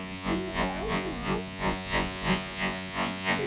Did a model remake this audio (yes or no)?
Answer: yes